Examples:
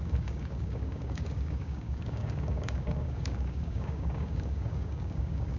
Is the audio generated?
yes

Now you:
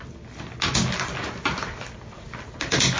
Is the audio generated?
no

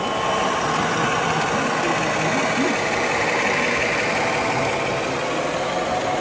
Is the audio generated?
no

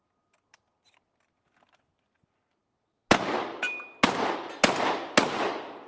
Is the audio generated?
no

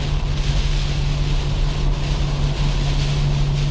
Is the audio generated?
no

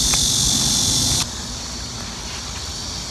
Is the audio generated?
no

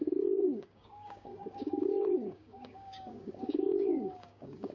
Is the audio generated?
yes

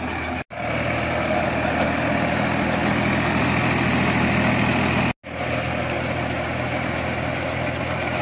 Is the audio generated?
no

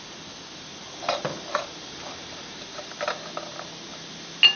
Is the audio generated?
no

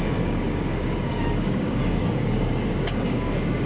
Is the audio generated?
yes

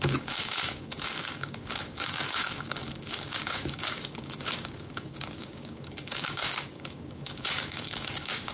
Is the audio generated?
yes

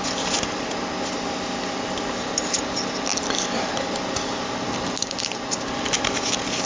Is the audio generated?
no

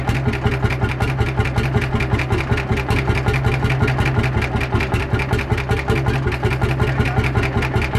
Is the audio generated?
no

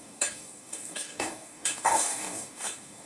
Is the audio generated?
yes